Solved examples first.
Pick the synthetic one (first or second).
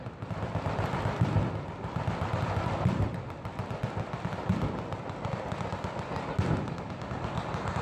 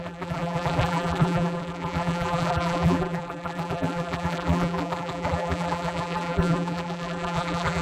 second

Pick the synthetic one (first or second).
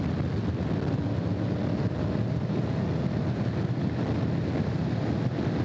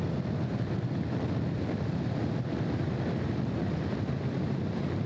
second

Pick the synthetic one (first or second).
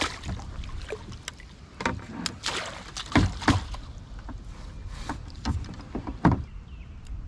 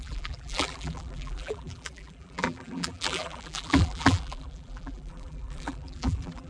second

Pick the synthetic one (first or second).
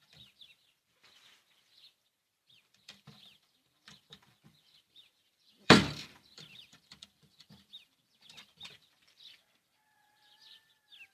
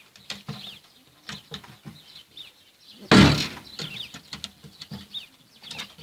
first